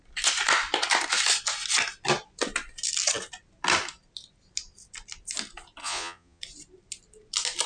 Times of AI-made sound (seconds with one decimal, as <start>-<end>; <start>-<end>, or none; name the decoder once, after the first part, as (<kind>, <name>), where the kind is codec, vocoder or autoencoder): 5.8-6.4 (vocoder, Vocos)